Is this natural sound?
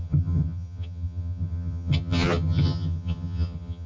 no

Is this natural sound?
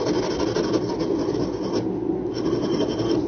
yes